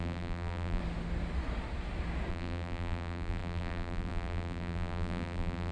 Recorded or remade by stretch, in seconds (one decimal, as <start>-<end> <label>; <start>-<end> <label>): 0.0-0.8 remade; 0.8-2.3 recorded; 2.3-5.7 remade